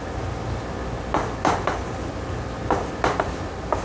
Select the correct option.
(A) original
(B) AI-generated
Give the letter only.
A